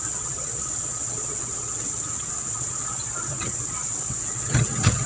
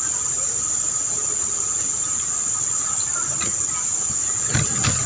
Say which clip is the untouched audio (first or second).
second